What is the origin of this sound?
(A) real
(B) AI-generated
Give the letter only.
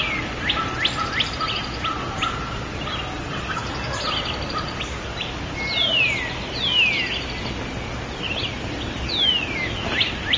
A